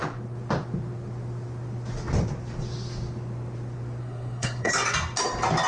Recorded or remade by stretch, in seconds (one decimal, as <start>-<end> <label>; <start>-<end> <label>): 0.0-4.0 recorded; 4.0-4.7 remade; 4.7-5.7 recorded